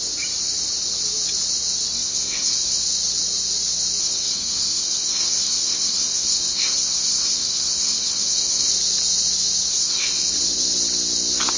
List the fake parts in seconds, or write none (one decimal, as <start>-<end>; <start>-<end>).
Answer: 1.9-2.8; 4.0-8.7; 9.7-10.3